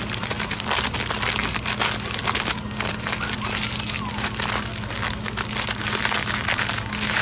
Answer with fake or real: real